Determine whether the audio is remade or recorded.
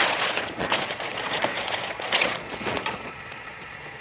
remade